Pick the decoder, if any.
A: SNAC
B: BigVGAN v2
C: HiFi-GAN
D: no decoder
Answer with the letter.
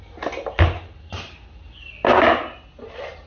D